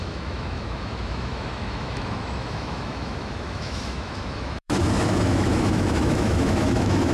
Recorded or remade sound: remade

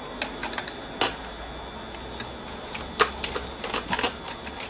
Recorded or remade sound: recorded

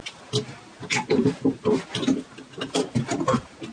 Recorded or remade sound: recorded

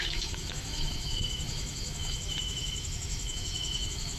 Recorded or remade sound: remade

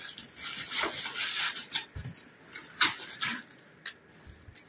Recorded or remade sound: recorded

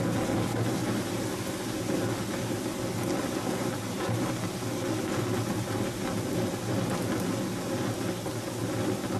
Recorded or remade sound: recorded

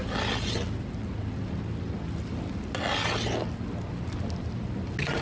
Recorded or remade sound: recorded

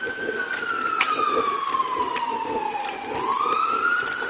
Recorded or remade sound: recorded